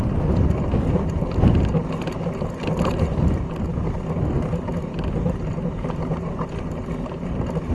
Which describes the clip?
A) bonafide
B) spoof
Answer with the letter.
A